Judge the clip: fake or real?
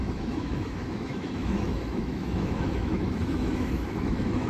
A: fake